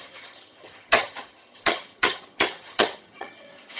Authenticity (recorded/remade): remade